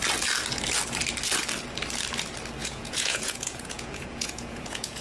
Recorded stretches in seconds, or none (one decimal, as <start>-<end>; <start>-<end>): 0.0-2.6